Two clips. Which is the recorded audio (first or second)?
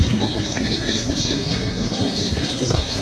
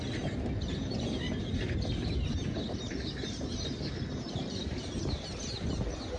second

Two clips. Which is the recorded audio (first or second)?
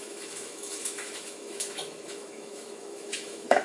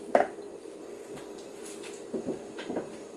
second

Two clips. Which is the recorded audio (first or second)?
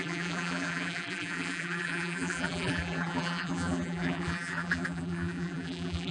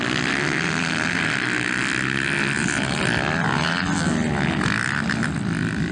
second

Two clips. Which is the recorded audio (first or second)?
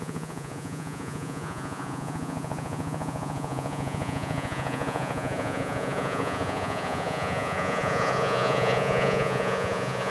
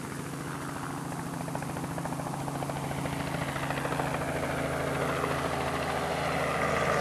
second